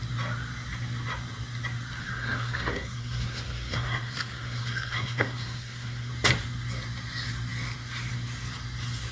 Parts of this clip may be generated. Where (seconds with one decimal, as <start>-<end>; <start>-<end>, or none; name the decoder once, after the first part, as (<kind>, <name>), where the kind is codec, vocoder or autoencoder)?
2.0-6.1 (codec, SNAC)